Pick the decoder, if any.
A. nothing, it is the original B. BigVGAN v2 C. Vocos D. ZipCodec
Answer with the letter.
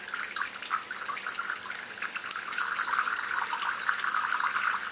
A